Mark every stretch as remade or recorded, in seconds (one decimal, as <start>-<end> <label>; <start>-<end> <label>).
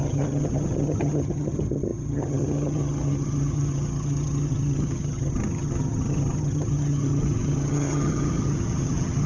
0.0-9.3 remade